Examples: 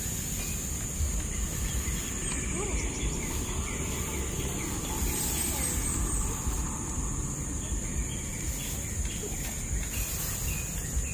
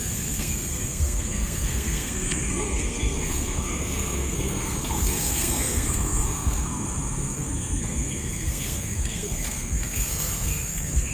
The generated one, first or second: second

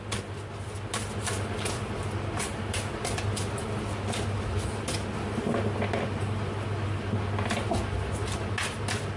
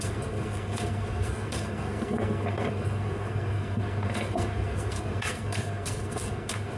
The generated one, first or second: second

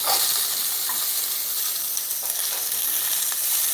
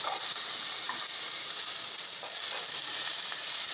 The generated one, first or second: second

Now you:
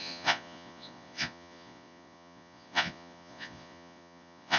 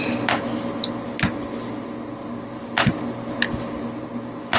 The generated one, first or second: first